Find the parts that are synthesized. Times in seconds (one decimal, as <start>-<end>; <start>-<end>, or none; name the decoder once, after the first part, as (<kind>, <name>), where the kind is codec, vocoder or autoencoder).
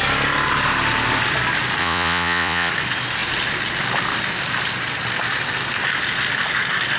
1.8-2.7 (vocoder, Vocos)